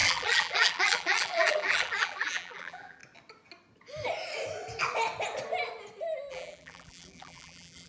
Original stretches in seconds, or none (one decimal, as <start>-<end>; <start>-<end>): 3.0-6.3